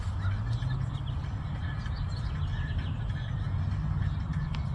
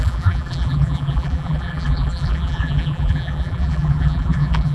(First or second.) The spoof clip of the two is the second